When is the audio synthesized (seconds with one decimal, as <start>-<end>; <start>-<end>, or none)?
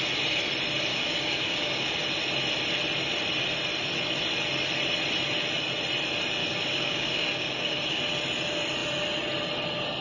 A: 0.9-2.0; 6.4-8.0